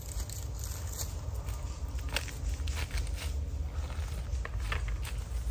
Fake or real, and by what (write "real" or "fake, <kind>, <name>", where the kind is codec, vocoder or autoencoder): real